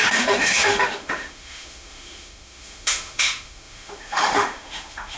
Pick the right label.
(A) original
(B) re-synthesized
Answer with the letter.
B